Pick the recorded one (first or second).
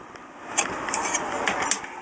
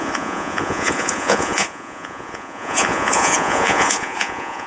first